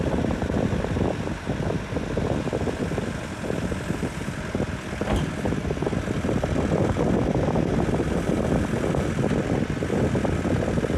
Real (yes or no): yes